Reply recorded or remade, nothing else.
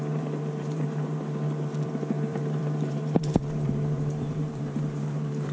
remade